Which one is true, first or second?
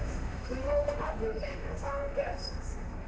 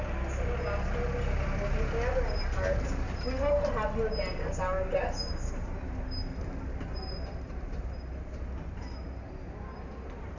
second